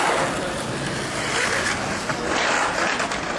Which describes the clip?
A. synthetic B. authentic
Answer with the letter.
B